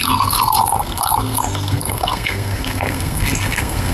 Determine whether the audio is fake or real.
fake